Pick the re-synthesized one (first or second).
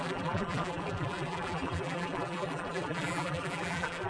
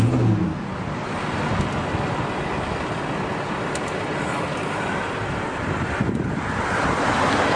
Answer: first